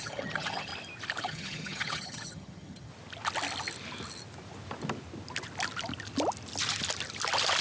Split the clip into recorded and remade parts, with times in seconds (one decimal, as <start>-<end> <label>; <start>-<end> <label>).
0.0-0.7 remade; 0.7-1.2 recorded; 1.2-2.9 remade; 2.9-7.6 recorded